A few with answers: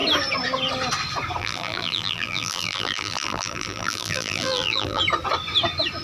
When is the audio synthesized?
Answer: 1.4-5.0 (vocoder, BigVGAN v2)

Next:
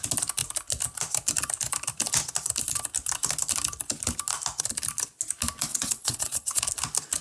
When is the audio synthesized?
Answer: 5.7-6.6 (vocoder, WaveNeXt)

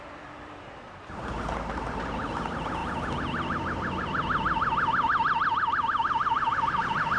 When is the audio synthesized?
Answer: none

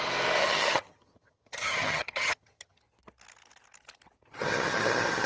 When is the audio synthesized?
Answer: 0.4-2.8 (vocoder, HiFi-GAN); 4.4-5.3

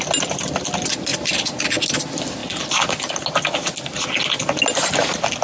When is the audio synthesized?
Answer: none

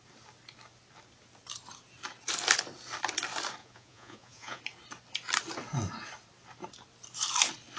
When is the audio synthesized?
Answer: 3.6-4.6 (vocoder, Vocos)

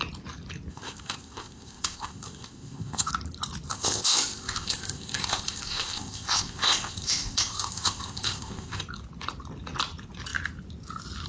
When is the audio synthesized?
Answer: 0.7-3.1 (codec, ZipCodec); 3.7-8.8

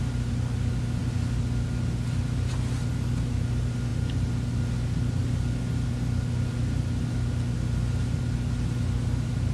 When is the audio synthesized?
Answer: none